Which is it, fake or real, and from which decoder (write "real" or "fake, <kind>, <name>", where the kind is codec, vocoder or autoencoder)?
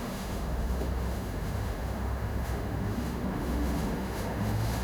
fake, autoencoder, DAC-VAE